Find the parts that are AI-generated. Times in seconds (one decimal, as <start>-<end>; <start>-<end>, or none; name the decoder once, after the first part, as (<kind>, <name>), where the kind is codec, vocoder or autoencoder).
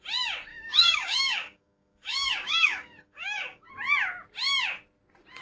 0.5-3.7 (codec, DAC)